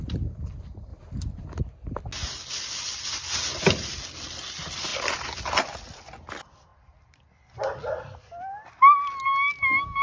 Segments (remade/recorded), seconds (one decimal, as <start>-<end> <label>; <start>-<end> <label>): 0.0-10.0 recorded